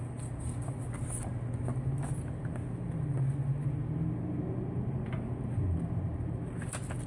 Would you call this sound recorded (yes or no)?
yes